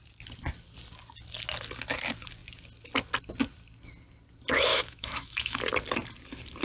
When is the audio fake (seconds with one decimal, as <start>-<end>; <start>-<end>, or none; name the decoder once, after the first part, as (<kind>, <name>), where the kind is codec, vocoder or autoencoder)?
4.7-5.6 (autoencoder, DAC-VAE)